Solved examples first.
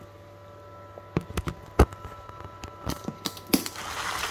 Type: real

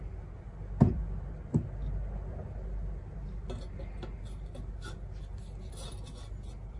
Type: real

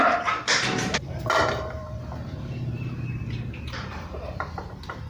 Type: fake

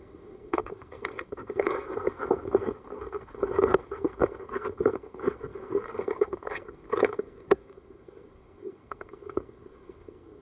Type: fake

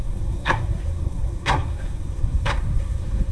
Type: fake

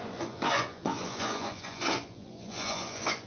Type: fake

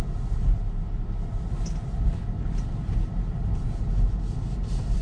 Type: real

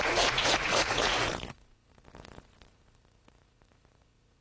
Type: fake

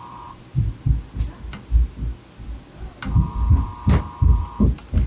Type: real